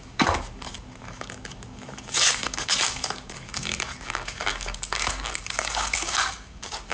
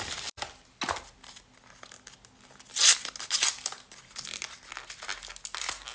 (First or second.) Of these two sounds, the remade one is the first